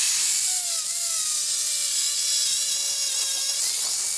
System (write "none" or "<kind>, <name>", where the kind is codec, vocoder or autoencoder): none